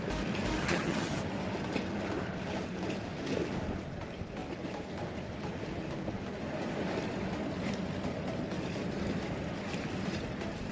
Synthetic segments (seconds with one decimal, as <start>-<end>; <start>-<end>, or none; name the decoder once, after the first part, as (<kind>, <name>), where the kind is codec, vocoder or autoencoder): 0.6-1.2 (vocoder, HiFi-GAN)